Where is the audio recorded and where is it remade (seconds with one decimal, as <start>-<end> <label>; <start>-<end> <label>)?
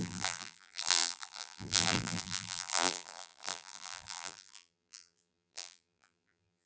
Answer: 0.0-6.7 remade